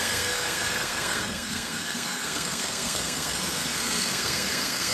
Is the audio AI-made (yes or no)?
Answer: yes